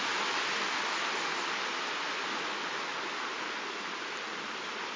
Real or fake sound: real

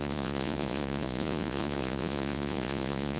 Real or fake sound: fake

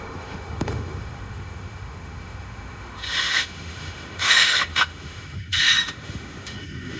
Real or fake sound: fake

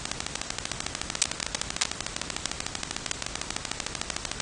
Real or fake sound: real